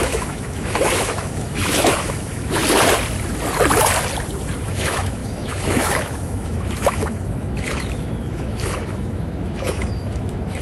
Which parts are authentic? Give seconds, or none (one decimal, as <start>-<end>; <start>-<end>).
2.6-4.6